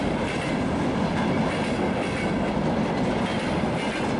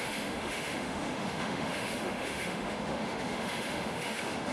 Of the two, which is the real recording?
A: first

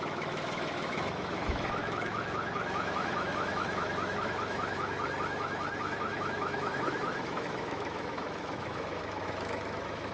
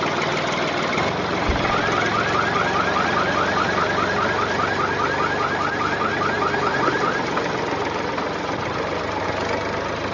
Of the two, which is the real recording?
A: second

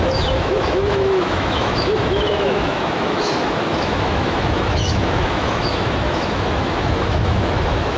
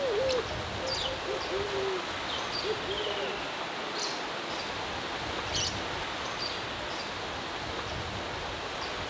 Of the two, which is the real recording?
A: second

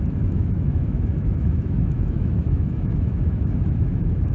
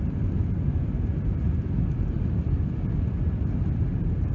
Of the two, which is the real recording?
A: second